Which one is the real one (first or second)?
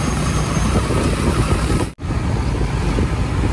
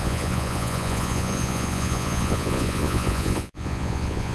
first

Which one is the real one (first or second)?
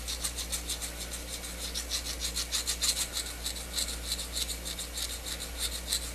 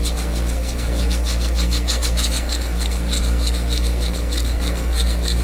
first